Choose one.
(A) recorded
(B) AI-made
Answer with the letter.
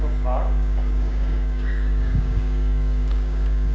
B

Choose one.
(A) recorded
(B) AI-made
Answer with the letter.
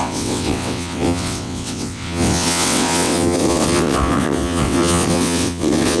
B